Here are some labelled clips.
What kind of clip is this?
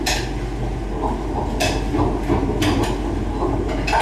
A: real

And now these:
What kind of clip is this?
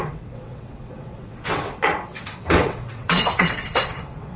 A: fake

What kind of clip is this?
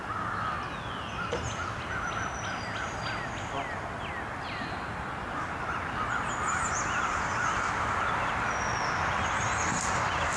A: real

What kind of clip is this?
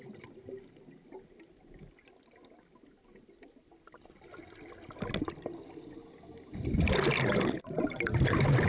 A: real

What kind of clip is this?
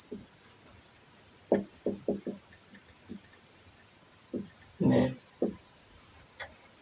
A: real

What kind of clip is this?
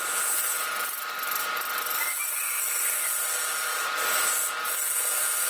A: real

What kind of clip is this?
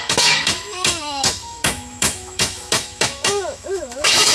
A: fake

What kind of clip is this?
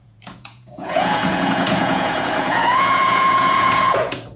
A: fake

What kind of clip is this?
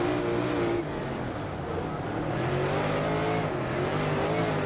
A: real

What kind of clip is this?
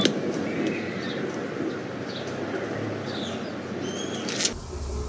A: real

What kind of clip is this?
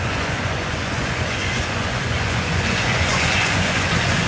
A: fake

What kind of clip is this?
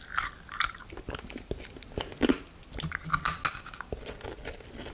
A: real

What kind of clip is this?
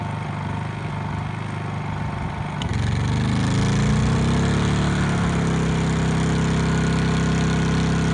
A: real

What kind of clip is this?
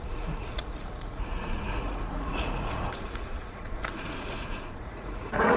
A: fake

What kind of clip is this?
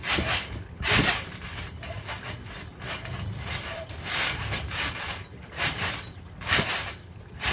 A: real